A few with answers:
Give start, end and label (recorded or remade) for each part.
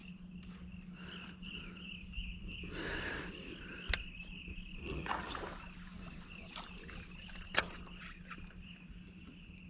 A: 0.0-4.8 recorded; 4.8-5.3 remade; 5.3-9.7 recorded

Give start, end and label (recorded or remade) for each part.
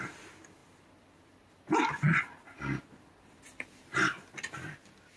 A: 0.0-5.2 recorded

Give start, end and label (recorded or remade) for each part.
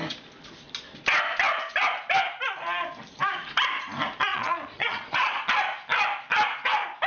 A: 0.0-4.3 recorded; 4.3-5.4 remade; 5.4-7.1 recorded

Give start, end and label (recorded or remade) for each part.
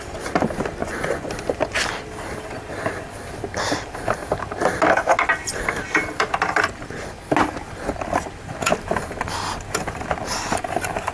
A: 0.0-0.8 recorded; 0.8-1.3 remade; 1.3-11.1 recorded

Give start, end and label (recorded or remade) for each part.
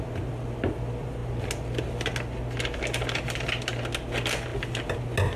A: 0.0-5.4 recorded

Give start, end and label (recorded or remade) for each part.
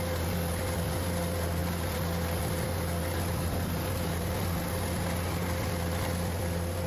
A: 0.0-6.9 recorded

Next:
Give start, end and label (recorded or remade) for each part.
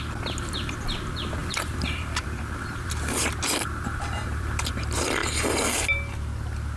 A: 0.0-1.4 recorded; 1.4-4.8 remade; 4.8-6.8 recorded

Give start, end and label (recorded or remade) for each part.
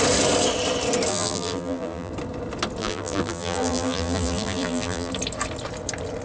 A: 0.0-1.1 recorded; 1.1-2.1 remade; 2.1-2.8 recorded; 2.8-5.1 remade; 5.1-6.2 recorded